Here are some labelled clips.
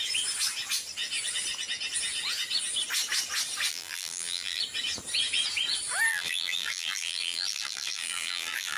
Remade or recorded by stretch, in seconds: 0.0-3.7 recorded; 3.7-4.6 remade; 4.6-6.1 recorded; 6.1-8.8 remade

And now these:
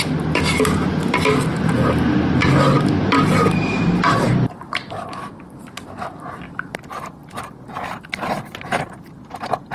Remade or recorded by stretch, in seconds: 0.0-9.7 recorded

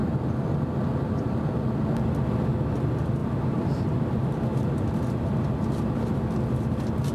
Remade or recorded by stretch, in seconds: 0.0-3.2 recorded; 3.2-6.2 remade; 6.2-7.1 recorded

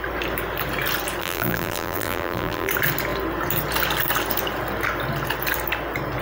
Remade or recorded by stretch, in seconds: 0.0-1.2 recorded; 1.2-2.7 remade; 2.7-6.2 recorded

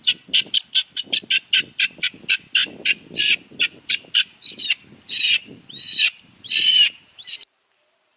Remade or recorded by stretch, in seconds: 0.0-5.4 recorded; 5.4-8.2 remade